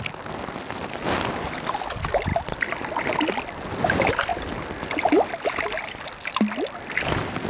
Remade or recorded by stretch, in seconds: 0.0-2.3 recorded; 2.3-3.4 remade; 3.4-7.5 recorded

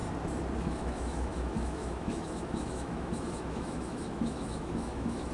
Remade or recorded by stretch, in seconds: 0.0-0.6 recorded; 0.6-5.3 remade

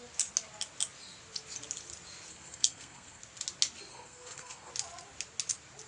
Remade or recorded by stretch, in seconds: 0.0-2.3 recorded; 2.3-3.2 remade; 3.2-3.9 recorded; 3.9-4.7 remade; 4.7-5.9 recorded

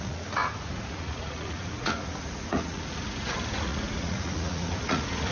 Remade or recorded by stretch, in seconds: 0.0-5.3 remade

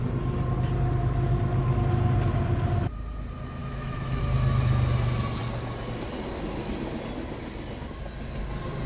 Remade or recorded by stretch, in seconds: 0.0-3.6 recorded; 3.6-4.2 remade; 4.2-8.9 recorded

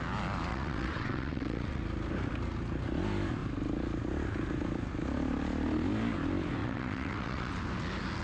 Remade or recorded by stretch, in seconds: 0.0-0.5 recorded; 0.5-1.8 remade; 1.8-6.6 recorded; 6.6-7.5 remade; 7.5-8.2 recorded

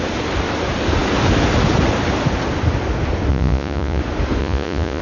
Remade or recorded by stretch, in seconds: 0.0-3.3 recorded; 3.3-4.0 remade; 4.0-4.4 recorded; 4.4-5.0 remade